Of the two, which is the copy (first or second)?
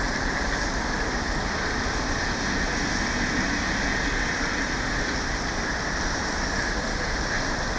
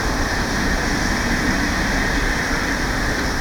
second